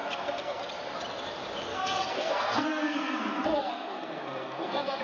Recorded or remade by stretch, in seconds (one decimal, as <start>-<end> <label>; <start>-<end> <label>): 0.0-0.6 remade; 0.6-1.7 recorded; 1.7-5.0 remade

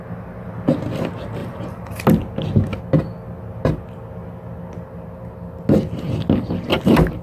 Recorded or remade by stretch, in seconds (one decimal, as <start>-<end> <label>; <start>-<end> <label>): 0.0-1.4 recorded; 1.4-1.9 remade; 1.9-7.2 recorded

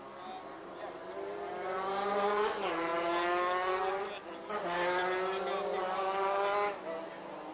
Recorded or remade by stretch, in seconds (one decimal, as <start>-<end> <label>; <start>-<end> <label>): 0.0-7.5 recorded

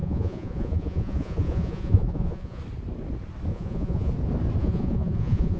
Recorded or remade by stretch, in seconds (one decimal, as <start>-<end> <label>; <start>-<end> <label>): 0.0-2.6 remade; 2.6-3.5 recorded; 3.5-4.1 remade; 4.1-4.6 recorded; 4.6-5.6 remade

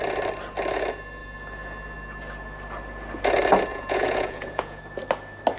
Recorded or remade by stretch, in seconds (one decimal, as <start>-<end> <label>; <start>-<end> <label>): 0.0-3.7 recorded; 3.7-4.8 remade; 4.8-5.6 recorded

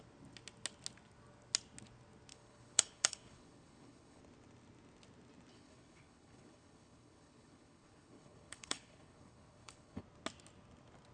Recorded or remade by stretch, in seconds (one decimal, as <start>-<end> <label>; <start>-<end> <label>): 0.0-2.3 recorded; 2.3-4.2 remade; 4.2-5.5 recorded; 5.5-10.0 remade; 10.0-11.1 recorded